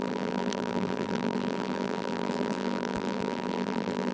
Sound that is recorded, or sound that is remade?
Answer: remade